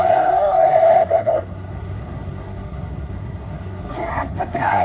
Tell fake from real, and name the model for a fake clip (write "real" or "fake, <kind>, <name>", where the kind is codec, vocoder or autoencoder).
fake, codec, SNAC